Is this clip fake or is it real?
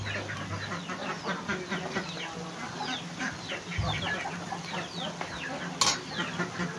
real